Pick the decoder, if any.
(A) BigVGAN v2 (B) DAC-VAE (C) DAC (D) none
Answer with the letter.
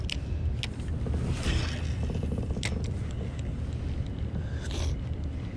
D